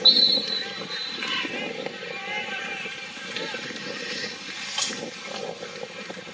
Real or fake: real